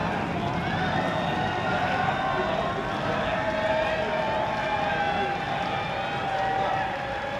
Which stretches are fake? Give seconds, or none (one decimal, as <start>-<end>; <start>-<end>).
none